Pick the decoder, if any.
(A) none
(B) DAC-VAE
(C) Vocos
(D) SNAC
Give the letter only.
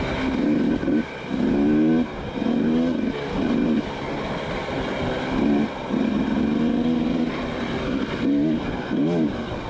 A